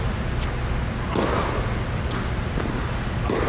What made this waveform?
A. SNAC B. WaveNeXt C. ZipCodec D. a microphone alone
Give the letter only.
D